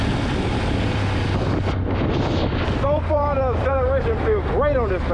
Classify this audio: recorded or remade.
recorded